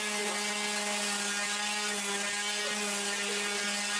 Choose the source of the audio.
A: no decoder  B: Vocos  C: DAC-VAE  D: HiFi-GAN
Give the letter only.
A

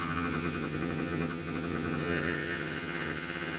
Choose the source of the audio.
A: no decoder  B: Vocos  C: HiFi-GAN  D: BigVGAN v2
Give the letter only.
C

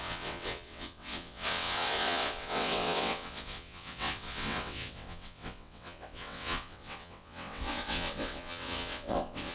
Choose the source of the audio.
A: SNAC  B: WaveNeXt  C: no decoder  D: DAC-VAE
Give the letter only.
B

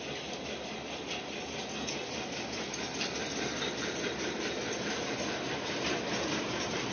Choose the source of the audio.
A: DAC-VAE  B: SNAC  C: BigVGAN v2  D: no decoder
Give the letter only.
D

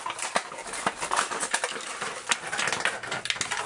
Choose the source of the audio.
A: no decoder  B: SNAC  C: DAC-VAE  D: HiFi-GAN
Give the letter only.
A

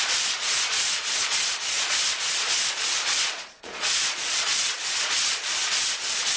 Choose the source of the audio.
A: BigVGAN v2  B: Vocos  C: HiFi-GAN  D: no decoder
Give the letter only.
B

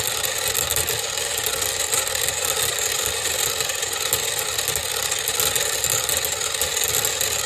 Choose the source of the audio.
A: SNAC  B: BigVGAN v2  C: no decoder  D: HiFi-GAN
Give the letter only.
C